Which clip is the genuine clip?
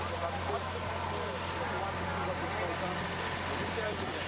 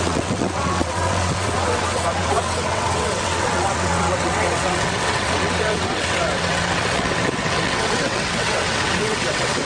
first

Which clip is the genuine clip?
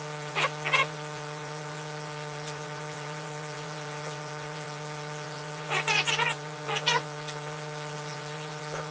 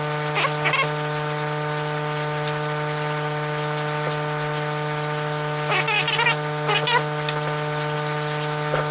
second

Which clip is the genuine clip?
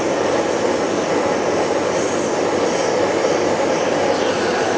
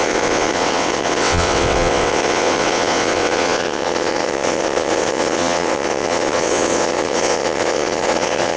first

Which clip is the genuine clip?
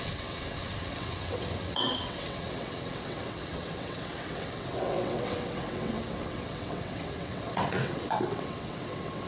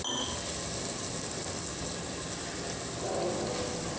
second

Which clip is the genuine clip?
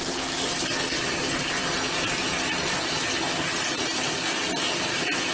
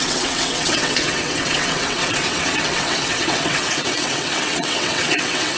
first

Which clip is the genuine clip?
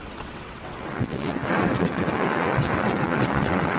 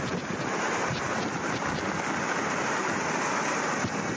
second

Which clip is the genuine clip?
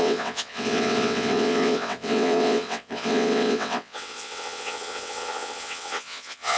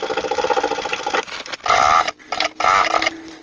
second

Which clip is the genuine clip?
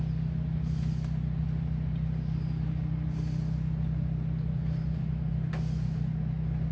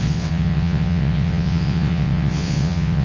first